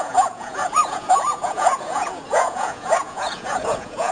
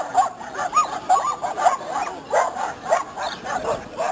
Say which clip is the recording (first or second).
second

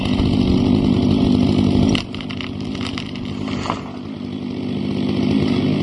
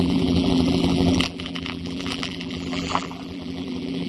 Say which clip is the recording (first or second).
first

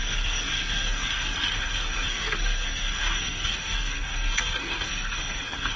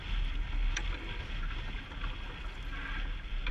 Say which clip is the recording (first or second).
second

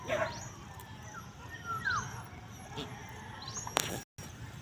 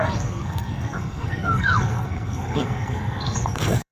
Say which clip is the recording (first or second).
first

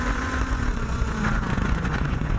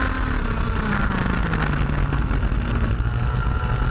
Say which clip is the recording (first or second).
second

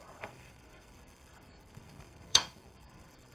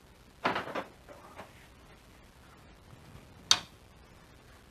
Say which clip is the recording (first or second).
second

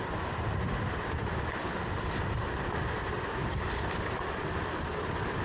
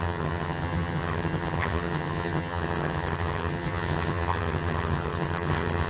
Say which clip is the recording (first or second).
first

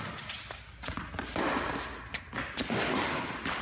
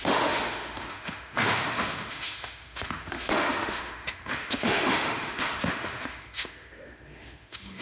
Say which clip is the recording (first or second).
first